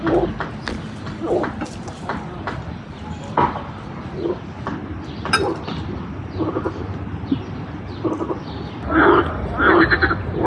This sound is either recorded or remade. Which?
recorded